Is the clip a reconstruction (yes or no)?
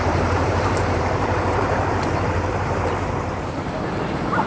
yes